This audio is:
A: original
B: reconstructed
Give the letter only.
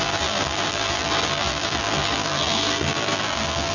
B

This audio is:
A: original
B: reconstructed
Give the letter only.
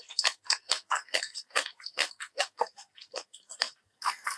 B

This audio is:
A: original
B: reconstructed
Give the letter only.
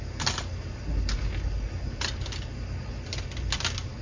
A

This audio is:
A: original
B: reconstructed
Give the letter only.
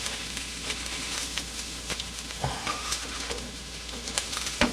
B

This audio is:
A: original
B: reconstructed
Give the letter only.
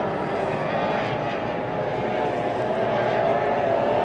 A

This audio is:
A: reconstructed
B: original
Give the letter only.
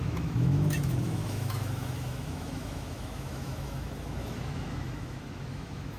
A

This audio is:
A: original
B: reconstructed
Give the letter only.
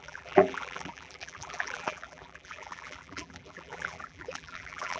B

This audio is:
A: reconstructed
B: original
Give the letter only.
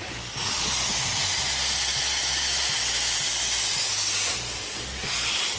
B